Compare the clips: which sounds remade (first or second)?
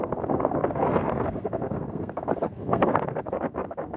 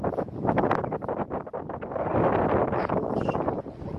first